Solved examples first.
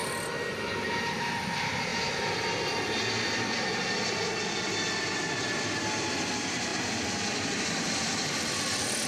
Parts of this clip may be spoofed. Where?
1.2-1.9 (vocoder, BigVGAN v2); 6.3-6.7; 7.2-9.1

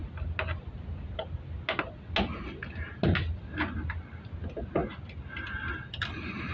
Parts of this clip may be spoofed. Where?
none

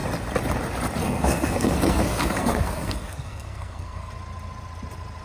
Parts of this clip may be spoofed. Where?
1.0-4.1 (codec, SNAC)

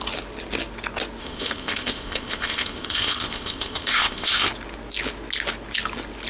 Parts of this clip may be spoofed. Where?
1.2-4.5 (codec, ZipCodec)

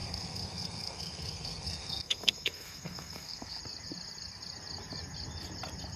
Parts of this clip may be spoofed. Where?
0.0-3.6 (codec, SNAC)

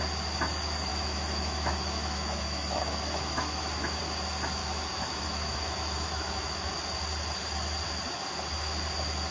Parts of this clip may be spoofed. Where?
0.9-4.0 (autoencoder, DAC-VAE); 4.6-6.7

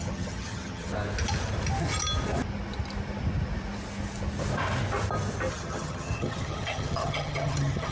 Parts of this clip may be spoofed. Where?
0.0-0.9 (vocoder, HiFi-GAN); 5.5-7.9